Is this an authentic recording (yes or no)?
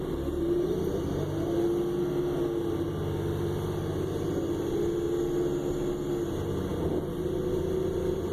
yes